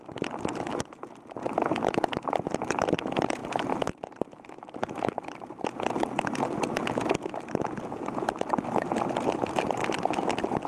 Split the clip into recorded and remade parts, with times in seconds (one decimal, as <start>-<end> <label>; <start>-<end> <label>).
0.0-3.4 recorded; 3.4-5.6 remade; 5.6-10.7 recorded